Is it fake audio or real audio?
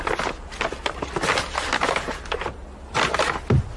real